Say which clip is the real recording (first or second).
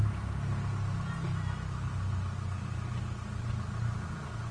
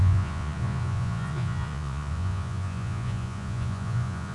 first